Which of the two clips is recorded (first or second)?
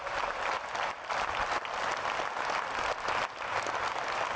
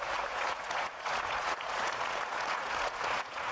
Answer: first